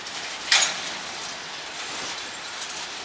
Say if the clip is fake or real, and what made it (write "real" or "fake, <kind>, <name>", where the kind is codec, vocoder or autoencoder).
real